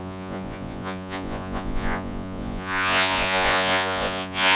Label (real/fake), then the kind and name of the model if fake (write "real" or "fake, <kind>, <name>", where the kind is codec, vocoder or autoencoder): fake, vocoder, Vocos